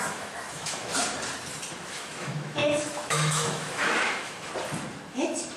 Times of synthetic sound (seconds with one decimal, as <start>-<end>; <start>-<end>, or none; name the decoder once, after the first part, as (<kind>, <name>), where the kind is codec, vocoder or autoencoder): 0.0-0.9 (autoencoder, DAC-VAE); 1.7-4.5; 5.1-5.6